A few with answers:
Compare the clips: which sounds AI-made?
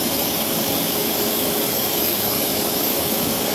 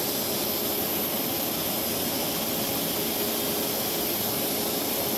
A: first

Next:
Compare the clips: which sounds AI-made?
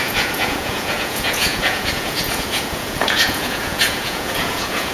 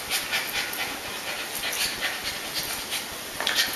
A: first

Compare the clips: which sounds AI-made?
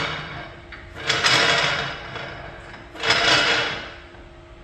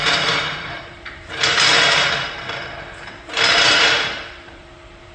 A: second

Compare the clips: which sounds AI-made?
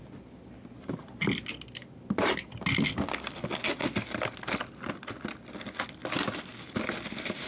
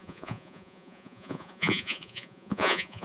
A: second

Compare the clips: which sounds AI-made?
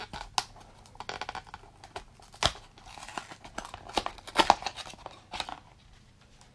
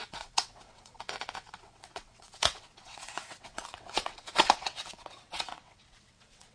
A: second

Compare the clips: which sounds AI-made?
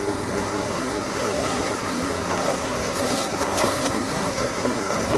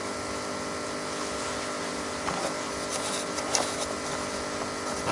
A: first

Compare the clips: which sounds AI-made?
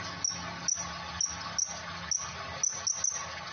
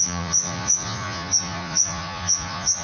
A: second